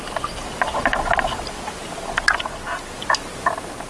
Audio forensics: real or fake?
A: real